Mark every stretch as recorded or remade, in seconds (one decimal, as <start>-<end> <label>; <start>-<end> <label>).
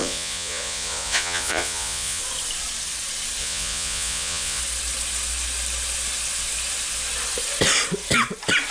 0.0-2.2 remade; 2.2-3.4 recorded; 3.4-4.6 remade; 4.6-8.7 recorded